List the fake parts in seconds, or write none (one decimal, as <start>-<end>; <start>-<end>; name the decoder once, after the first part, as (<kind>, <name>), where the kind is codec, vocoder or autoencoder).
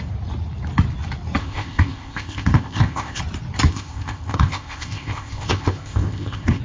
1.4-3.2 (codec, ZipCodec); 3.7-6.6